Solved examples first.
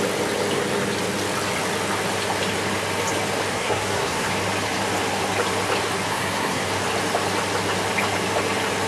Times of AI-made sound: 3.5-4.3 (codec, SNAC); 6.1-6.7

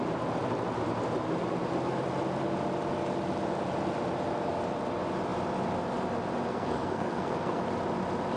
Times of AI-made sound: 6.5-7.6 (codec, SNAC)

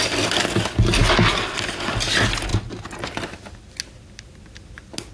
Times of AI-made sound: none

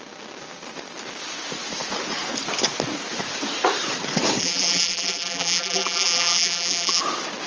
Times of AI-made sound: 4.4-7.0 (vocoder, BigVGAN v2)

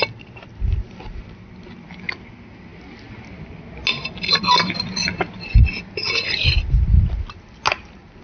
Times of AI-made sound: none